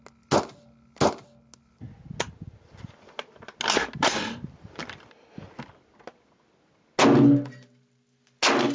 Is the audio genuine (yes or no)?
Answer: yes